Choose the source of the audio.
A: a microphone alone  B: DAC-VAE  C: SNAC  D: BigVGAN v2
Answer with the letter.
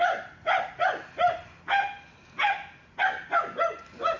A